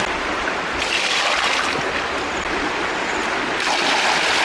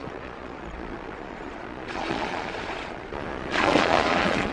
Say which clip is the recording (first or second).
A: first